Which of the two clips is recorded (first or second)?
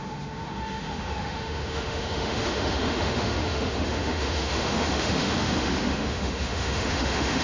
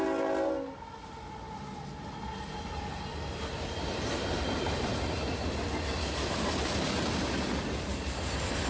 second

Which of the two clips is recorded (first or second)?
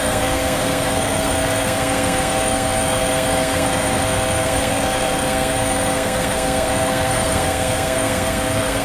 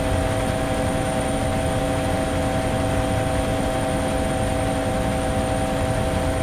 second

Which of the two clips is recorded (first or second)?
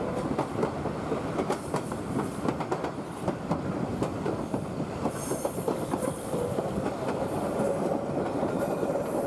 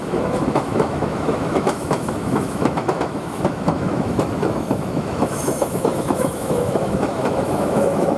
first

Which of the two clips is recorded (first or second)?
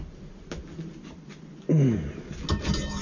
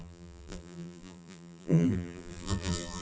first